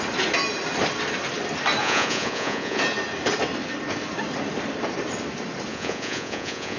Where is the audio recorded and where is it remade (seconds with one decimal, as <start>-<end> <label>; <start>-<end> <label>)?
0.0-1.8 recorded; 1.8-2.8 remade; 2.8-5.7 recorded; 5.7-6.8 remade